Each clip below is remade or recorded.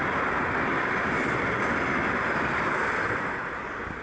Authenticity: recorded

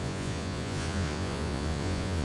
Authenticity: remade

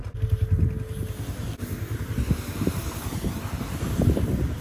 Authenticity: recorded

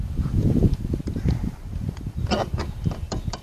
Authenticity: remade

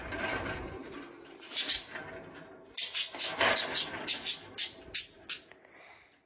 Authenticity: recorded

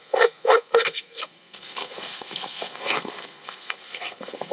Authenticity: remade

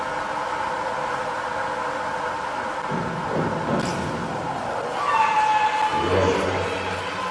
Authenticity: recorded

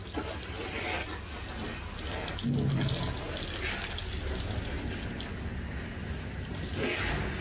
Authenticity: recorded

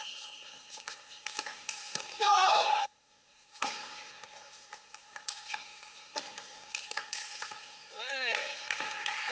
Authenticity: remade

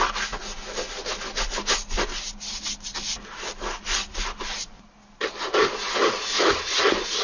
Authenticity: recorded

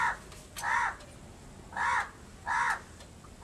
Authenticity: recorded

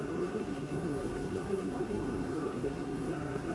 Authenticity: remade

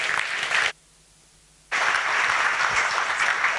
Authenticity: recorded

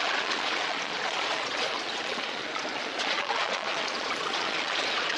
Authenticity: remade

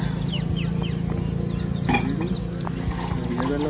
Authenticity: recorded